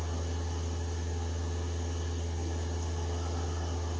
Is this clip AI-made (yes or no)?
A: no